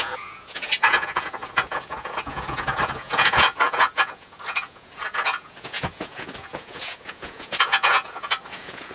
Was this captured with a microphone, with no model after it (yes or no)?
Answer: no